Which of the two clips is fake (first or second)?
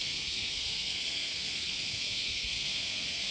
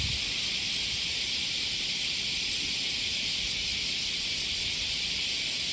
first